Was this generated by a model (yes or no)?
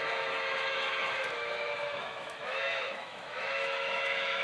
yes